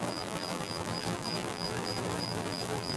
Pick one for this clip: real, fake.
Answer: fake